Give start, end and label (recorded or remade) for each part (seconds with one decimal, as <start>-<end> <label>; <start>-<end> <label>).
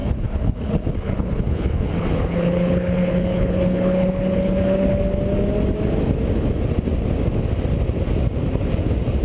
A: 0.0-5.0 remade; 5.0-9.2 recorded